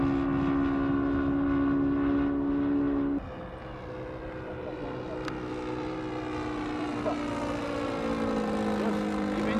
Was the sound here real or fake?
real